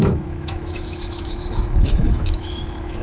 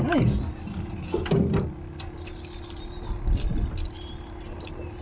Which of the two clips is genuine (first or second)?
second